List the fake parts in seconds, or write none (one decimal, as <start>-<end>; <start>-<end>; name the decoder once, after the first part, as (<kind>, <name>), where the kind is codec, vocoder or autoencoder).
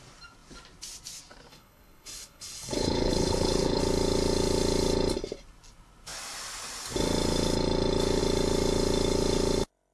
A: 1.5-3.8 (codec, HILCodec)